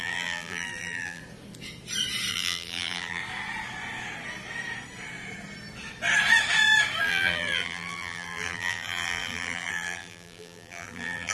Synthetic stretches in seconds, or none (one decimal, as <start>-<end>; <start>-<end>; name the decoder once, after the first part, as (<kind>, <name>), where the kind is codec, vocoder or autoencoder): 0.0-1.2 (vocoder, BigVGAN v2); 2.3-3.2; 7.0-11.3